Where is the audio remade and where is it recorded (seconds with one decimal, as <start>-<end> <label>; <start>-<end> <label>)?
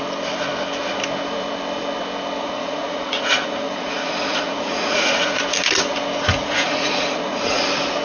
0.0-2.4 recorded; 2.4-5.4 remade; 5.4-6.3 recorded; 6.3-7.6 remade; 7.6-8.0 recorded